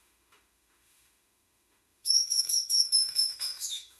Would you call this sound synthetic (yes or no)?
yes